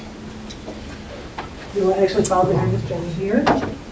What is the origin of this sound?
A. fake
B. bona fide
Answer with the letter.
B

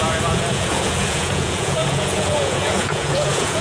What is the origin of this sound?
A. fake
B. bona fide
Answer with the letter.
A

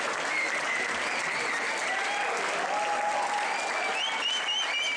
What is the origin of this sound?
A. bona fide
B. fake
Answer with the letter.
A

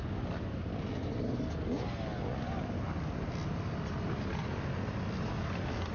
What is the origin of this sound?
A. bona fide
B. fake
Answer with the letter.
A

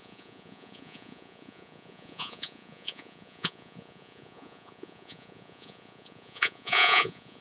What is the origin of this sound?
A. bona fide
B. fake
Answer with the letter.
B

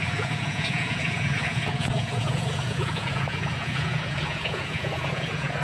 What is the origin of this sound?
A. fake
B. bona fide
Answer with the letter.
A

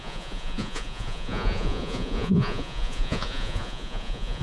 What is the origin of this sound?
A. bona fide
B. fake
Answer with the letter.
B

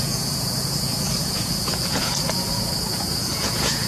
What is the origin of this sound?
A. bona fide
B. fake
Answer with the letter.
B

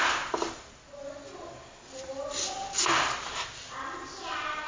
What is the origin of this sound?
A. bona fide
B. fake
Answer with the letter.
A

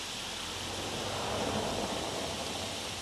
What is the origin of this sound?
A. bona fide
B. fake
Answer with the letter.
A